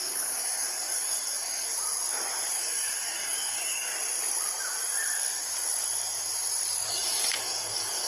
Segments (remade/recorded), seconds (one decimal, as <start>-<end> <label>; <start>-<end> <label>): 0.0-1.7 remade; 1.7-2.5 recorded; 2.5-3.9 remade; 3.9-6.9 recorded; 6.9-8.1 remade